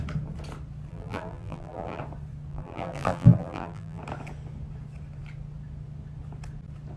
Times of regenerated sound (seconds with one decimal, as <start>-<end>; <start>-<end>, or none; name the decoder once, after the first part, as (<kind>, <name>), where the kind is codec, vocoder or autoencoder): 0.9-2.0 (vocoder, BigVGAN v2); 2.5-4.0